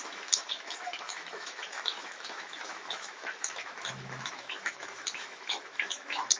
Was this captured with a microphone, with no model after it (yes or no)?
no